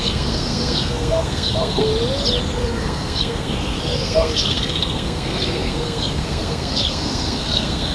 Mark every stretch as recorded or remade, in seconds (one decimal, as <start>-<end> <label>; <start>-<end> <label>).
0.0-1.9 remade; 1.9-2.4 recorded; 2.4-7.9 remade